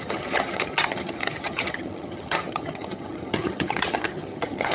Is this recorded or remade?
remade